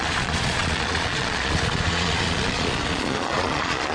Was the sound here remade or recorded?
remade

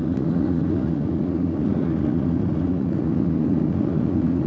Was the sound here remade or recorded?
remade